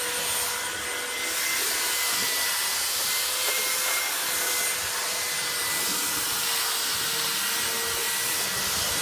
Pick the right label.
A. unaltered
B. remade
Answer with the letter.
A